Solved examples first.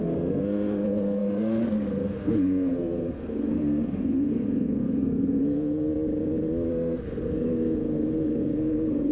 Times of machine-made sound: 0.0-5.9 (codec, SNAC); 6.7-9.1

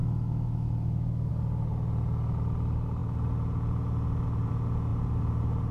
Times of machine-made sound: 0.0-1.3 (autoencoder, DAC-VAE)

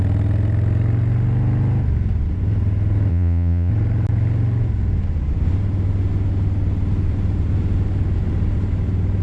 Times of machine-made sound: 3.1-3.7 (vocoder, Vocos)

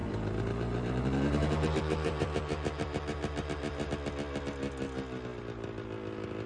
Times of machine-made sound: 0.0-3.9 (vocoder, BigVGAN v2)

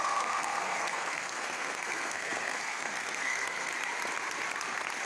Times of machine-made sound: 0.0-3.7 (codec, SNAC)

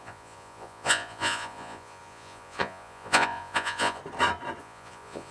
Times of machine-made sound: 0.0-4.0 (vocoder, Vocos); 4.6-5.3

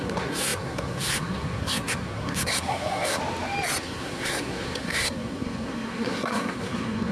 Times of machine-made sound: 0.0-3.2 (codec, SNAC); 3.8-7.1

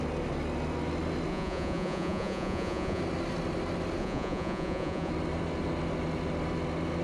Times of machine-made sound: 1.3-3.0 (vocoder, Vocos); 4.0-5.1